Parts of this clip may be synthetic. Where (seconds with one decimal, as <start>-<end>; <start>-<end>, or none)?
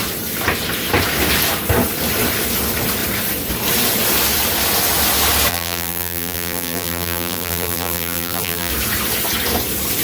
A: 5.5-8.7